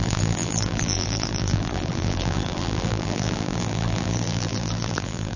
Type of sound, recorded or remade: remade